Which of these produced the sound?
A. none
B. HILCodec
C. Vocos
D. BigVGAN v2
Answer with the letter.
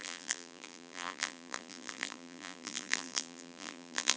D